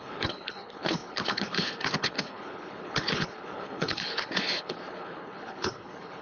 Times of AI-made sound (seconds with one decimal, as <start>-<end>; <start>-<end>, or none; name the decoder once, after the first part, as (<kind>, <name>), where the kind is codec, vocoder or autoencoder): 0.0-6.2 (codec, HILCodec)